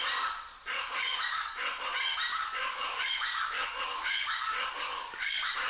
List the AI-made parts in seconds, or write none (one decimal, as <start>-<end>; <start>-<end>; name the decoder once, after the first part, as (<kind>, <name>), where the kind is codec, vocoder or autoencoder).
0.9-1.6 (codec, DAC); 2.3-5.7